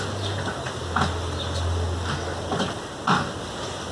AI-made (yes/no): no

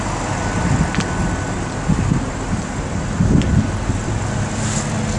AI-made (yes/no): no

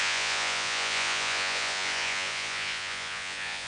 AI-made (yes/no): yes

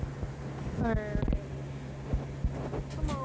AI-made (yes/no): no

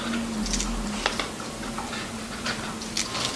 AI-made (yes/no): no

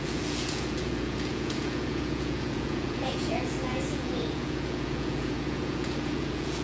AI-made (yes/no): yes